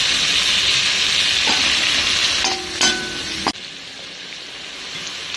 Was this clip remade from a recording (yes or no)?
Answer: no